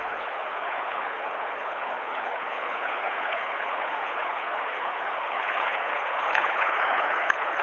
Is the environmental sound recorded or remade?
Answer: remade